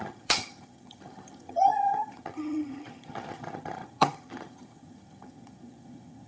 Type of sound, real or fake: fake